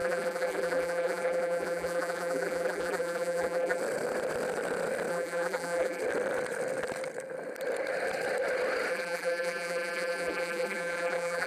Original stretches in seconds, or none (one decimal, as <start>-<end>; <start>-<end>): 3.8-5.1; 6.0-8.9